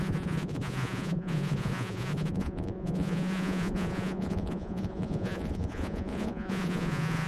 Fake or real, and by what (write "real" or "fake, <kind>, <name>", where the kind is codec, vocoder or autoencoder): fake, vocoder, Vocos